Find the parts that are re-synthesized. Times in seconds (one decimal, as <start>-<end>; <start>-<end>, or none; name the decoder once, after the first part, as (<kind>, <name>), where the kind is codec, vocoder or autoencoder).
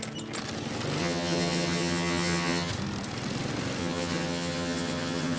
1.0-2.7 (vocoder, HiFi-GAN); 3.8-5.4